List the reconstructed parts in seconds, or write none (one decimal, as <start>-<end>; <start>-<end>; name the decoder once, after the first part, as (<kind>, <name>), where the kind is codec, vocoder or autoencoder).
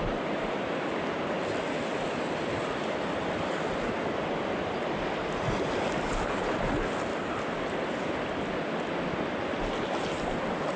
none